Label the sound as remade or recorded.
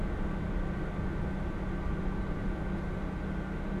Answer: recorded